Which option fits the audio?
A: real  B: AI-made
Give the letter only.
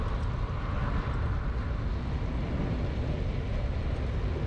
A